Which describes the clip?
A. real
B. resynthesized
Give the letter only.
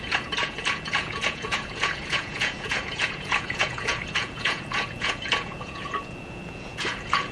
B